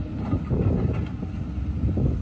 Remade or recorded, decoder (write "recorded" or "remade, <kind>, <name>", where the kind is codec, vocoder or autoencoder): recorded